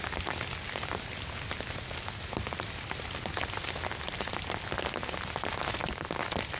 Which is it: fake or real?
real